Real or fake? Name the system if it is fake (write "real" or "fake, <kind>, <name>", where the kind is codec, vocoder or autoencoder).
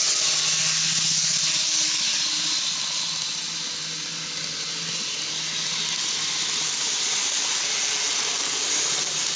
real